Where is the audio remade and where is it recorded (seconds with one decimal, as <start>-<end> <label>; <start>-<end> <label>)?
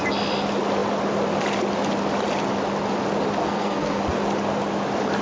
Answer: 0.0-3.4 recorded; 3.4-4.0 remade; 4.0-5.2 recorded